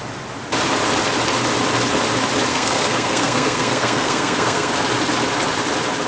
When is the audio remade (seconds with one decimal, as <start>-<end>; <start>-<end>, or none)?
2.5-4.7